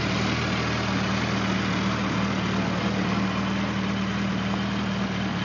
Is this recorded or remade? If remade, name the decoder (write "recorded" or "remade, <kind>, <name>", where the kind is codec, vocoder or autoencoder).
recorded